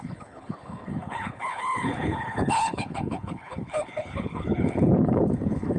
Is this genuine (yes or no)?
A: no